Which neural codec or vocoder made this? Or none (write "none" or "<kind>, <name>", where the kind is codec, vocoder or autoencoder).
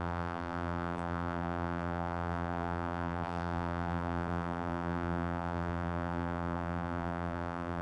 vocoder, BigVGAN v2